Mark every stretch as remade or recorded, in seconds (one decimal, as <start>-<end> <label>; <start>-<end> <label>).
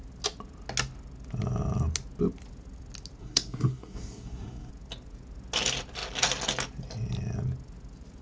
0.0-3.2 recorded; 3.2-4.7 remade; 4.7-8.2 recorded